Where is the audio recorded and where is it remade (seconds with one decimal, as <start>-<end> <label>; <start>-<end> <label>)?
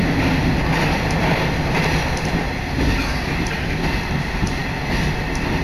0.0-5.6 recorded